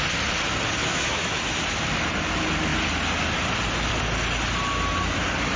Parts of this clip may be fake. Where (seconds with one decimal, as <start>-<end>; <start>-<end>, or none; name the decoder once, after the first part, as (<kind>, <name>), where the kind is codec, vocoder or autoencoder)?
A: 0.8-1.4 (autoencoder, DAC-VAE)